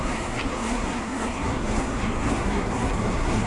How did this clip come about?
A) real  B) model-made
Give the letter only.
B